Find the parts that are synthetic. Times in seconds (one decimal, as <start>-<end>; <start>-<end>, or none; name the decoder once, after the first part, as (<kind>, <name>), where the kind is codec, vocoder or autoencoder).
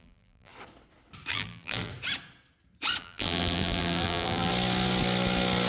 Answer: 0.0-0.5 (vocoder, BigVGAN v2); 1.3-1.9; 3.0-4.5